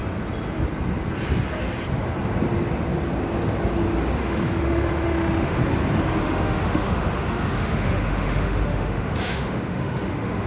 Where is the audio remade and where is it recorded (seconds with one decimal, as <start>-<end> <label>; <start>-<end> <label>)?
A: 0.0-4.2 recorded; 4.2-5.6 remade; 5.6-6.2 recorded; 6.2-10.5 remade